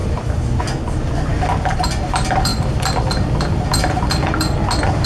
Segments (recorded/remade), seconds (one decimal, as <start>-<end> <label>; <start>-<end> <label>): 0.0-5.1 remade